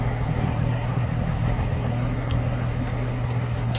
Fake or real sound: fake